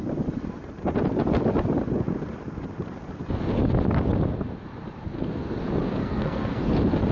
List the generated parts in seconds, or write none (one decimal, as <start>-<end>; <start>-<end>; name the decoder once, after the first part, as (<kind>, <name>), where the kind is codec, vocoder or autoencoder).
6.0-6.6 (codec, SNAC)